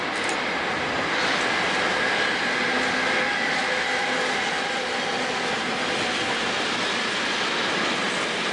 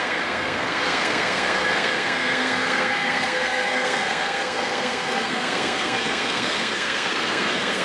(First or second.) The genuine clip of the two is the first